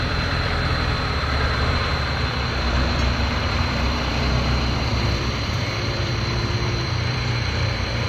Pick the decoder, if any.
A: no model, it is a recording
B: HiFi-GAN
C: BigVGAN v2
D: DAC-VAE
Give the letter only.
C